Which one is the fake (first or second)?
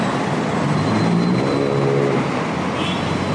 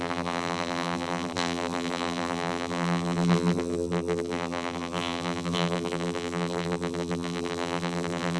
second